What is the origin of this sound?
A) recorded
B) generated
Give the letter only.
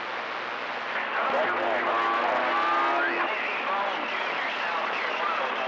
A